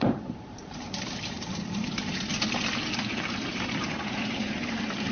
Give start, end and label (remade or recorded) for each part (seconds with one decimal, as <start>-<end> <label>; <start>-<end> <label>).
0.0-2.3 remade; 2.3-3.9 recorded; 3.9-5.1 remade